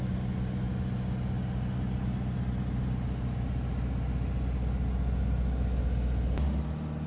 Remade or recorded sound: recorded